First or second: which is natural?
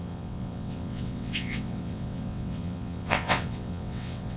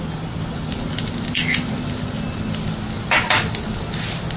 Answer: second